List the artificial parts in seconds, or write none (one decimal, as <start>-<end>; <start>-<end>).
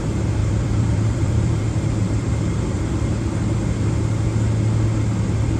0.4-2.9